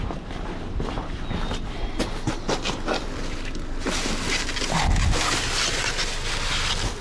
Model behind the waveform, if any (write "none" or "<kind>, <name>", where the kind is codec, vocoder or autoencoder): none